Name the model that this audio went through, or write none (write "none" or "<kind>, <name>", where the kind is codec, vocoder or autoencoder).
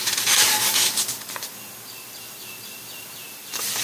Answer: none